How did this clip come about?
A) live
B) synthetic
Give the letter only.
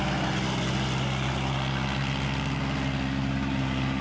A